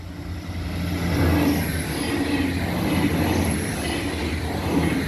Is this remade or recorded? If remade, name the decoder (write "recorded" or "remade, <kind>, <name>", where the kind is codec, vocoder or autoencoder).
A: recorded